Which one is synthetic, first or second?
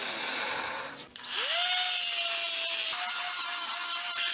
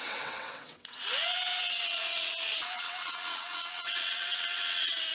second